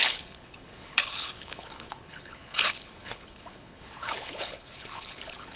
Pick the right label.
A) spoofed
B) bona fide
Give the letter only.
A